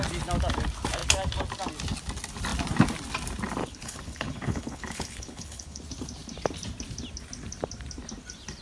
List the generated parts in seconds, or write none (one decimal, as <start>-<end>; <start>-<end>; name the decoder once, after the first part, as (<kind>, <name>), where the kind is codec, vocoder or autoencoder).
3.6-5.8 (codec, HILCodec)